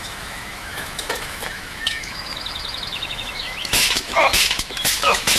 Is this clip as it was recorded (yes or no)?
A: no